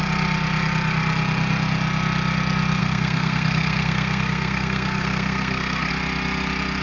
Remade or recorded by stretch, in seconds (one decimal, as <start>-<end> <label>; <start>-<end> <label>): 0.0-2.8 recorded; 2.8-5.9 remade; 5.9-6.8 recorded